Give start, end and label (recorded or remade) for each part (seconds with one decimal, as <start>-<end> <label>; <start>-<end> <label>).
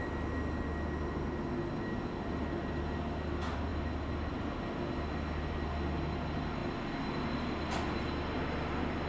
0.0-9.1 recorded